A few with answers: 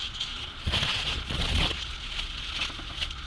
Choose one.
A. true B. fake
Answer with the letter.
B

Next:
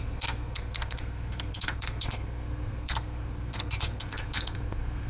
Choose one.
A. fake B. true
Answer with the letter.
A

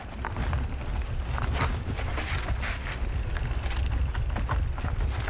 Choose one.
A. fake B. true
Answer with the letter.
B